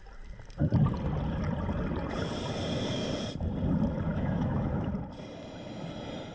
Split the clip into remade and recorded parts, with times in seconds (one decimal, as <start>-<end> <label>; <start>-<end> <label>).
0.0-4.1 recorded; 4.1-4.9 remade; 4.9-6.3 recorded